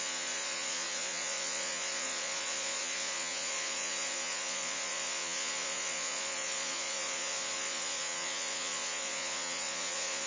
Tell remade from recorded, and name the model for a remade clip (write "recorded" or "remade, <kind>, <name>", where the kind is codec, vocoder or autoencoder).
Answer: remade, vocoder, Vocos